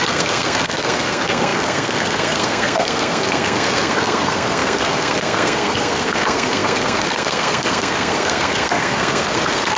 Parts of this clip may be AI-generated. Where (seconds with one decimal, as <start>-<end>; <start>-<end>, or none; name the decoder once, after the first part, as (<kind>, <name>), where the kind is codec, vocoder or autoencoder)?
0.0-9.8 (codec, SNAC)